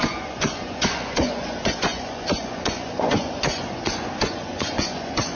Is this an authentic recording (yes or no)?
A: no